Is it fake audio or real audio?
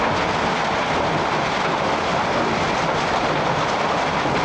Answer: real